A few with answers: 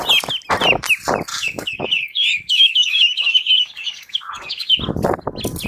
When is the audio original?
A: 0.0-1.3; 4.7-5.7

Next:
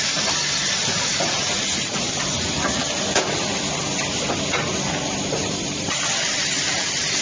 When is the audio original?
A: 1.1-5.3

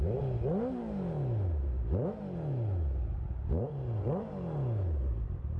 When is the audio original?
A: 0.0-5.6

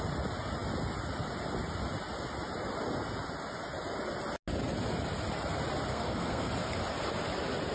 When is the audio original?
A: 0.0-5.9; 6.5-7.7